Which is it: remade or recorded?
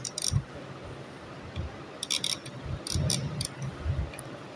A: recorded